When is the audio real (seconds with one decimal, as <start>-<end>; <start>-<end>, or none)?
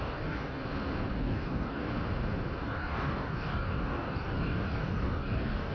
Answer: 0.6-1.1; 1.9-2.6